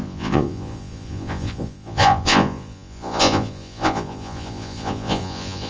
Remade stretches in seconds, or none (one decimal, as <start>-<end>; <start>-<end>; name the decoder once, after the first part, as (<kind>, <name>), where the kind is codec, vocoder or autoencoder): 0.0-5.7 (vocoder, Vocos)